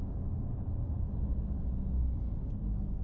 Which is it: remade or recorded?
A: recorded